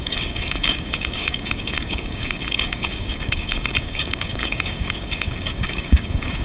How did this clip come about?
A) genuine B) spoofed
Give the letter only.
B